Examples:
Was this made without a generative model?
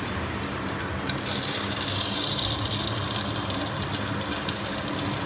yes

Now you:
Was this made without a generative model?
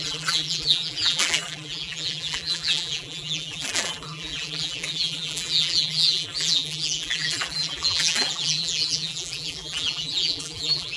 no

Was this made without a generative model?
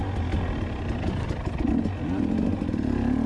yes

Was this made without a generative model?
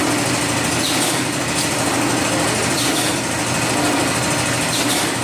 yes